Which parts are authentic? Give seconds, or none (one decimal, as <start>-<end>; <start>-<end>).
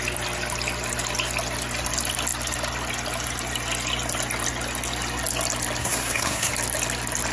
0.0-5.8; 6.5-7.3